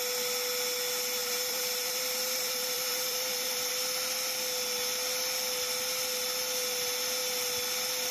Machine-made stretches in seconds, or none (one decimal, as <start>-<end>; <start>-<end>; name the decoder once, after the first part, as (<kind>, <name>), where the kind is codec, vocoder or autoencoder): 1.2-3.7 (vocoder, BigVGAN v2)